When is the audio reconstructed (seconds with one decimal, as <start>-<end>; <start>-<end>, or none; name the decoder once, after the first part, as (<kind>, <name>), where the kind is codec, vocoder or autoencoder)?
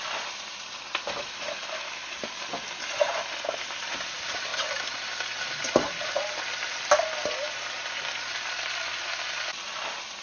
0.0-4.5 (vocoder, BigVGAN v2); 6.2-10.2